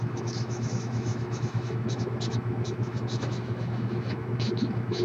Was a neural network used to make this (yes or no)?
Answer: yes